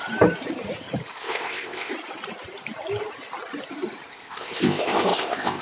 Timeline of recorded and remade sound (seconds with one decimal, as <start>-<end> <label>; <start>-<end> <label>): 0.0-1.1 recorded; 1.1-1.9 remade; 1.9-4.1 recorded; 4.1-5.6 remade